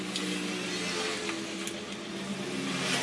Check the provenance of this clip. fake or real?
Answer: real